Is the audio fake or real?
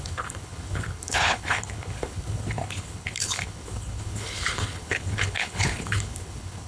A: fake